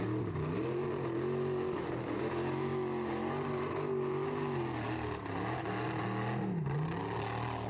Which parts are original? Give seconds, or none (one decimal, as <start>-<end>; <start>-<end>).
0.0-7.7